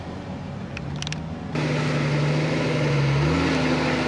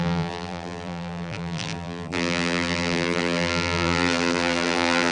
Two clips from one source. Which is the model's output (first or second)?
second